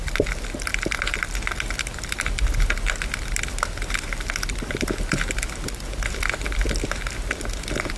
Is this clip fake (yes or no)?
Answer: no